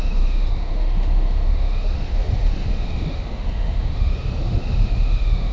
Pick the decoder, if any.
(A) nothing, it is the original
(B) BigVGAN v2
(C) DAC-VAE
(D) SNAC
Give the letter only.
C